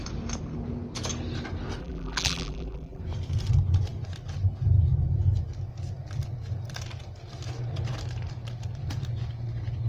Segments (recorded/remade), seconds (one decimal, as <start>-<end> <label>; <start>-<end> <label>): 0.0-1.8 recorded; 1.8-3.0 remade; 3.0-9.9 recorded